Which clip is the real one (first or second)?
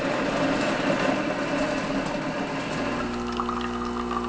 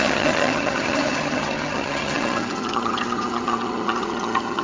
first